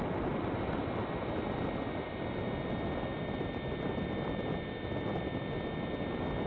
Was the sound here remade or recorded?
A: recorded